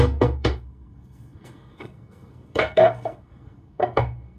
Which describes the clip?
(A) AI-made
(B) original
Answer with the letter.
A